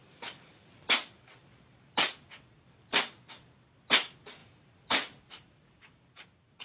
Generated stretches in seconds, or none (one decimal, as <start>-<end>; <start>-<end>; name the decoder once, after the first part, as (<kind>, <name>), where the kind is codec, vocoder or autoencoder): 4.4-6.0 (vocoder, BigVGAN v2)